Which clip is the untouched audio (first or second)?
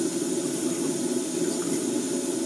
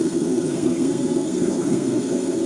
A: first